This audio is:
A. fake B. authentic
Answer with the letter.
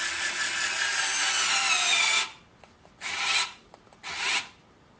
B